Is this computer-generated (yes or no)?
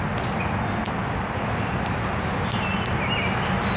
no